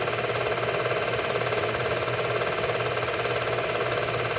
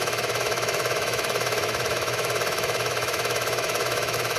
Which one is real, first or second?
first